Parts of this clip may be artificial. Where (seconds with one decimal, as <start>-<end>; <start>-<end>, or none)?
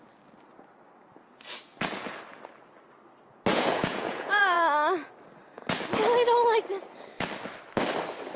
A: 3.5-4.6